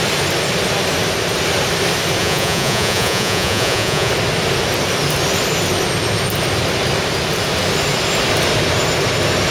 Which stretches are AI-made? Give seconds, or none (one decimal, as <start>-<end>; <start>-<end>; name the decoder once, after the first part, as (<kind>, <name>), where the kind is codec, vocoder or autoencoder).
2.2-4.1 (vocoder, Vocos)